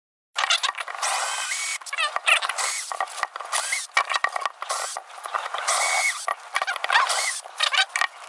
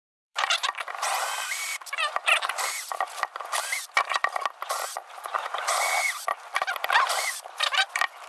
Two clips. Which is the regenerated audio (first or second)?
second